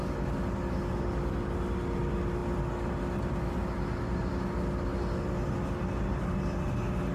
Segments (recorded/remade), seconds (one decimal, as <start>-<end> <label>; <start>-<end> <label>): 0.0-7.1 recorded